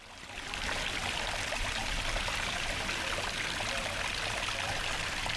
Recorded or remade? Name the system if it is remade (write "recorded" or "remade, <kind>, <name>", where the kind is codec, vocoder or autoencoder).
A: recorded